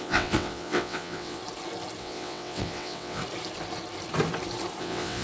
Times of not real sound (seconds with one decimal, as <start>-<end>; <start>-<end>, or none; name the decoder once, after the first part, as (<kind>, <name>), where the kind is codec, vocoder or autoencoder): 0.0-1.4 (vocoder, WaveNeXt); 2.0-3.2; 4.8-5.2